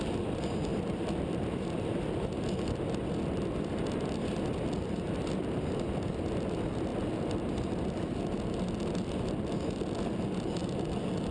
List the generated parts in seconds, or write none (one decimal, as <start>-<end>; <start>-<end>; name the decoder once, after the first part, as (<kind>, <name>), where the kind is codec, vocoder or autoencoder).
none